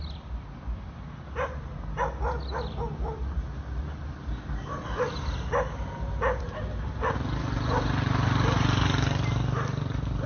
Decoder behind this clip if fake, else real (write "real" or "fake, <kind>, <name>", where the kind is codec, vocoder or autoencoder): real